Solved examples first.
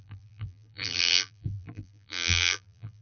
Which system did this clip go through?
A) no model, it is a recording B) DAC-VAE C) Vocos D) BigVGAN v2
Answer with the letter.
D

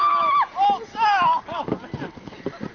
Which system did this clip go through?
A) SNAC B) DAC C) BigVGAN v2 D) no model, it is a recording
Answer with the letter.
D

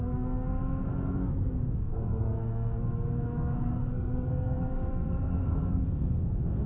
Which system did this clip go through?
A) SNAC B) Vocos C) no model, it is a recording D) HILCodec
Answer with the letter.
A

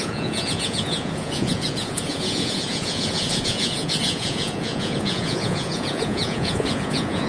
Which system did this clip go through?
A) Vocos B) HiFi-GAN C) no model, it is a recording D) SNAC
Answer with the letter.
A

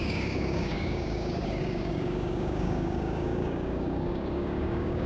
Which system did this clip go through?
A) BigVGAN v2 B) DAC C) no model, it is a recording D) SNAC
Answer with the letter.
B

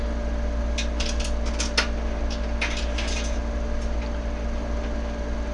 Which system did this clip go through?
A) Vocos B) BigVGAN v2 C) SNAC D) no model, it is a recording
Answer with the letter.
D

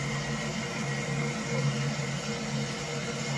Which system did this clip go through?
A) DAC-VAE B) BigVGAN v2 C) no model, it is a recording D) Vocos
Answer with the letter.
C